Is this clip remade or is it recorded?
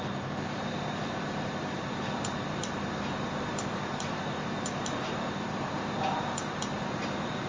remade